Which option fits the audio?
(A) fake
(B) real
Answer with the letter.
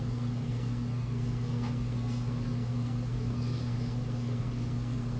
A